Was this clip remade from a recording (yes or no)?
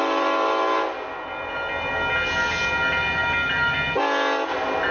no